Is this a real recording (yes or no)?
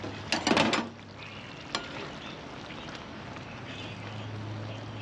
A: yes